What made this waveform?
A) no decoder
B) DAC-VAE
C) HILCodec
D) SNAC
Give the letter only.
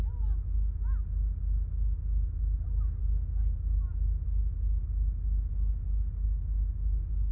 A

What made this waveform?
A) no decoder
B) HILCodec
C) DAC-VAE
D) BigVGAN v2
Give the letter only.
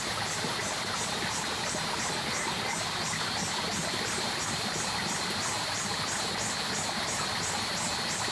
A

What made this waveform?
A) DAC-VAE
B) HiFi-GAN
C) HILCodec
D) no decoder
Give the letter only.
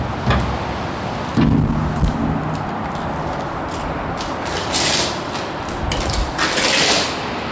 D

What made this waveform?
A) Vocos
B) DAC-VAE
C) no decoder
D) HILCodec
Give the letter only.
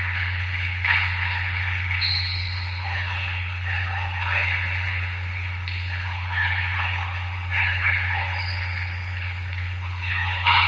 D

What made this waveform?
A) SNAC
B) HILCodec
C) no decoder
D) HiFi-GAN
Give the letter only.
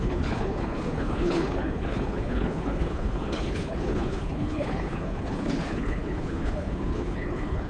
B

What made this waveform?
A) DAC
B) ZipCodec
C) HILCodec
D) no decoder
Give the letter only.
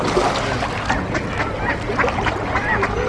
D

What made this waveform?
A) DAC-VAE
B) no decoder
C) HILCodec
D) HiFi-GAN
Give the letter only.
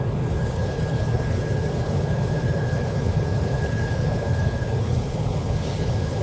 C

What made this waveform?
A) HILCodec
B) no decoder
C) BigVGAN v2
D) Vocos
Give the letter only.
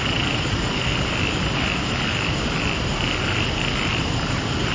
B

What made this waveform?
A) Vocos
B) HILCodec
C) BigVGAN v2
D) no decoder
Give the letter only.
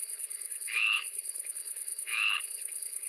B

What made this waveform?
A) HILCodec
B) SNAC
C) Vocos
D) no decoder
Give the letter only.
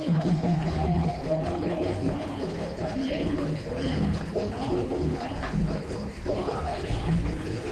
A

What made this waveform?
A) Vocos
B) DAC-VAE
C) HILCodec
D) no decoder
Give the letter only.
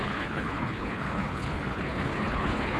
C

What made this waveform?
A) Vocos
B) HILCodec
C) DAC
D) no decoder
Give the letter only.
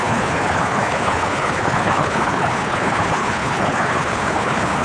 B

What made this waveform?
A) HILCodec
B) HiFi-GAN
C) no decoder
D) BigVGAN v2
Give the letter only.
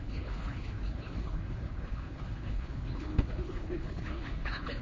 A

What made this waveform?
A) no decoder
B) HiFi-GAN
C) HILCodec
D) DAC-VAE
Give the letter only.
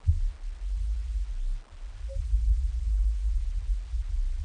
A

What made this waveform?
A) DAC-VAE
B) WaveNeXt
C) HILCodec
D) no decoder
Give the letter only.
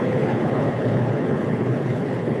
C